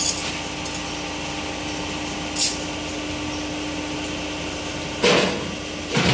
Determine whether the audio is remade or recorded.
recorded